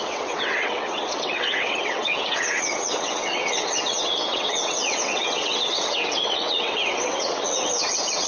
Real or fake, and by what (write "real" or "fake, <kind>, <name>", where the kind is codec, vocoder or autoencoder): fake, vocoder, WaveNeXt